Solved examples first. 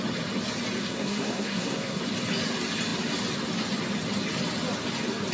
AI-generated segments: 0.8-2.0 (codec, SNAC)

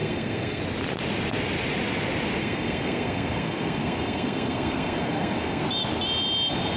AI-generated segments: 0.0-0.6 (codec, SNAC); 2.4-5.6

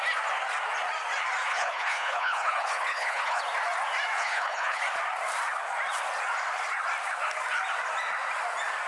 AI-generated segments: 1.5-3.4 (codec, HILCodec); 4.2-4.8

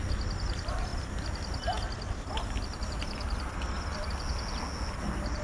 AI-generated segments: none

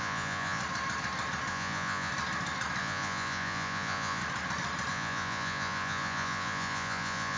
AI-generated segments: 0.0-0.6 (vocoder, Vocos); 1.5-2.1; 2.8-4.2; 4.9-7.4

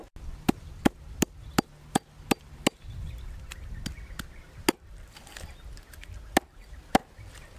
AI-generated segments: none